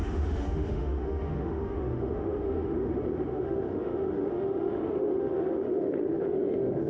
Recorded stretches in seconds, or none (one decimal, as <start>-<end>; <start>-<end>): none